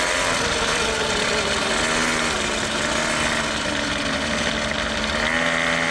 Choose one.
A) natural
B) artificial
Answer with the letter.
A